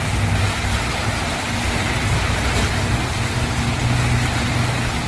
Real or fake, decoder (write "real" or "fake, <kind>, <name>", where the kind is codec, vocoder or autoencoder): real